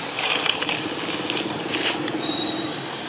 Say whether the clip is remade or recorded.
remade